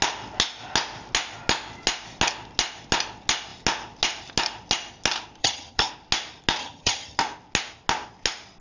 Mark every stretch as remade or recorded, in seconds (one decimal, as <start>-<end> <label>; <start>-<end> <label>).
0.0-5.4 recorded; 5.4-5.9 remade; 5.9-6.6 recorded; 6.6-7.2 remade; 7.2-8.6 recorded